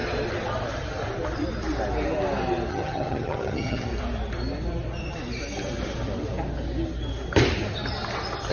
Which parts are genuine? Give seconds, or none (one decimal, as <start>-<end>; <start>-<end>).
0.0-2.7; 3.9-8.5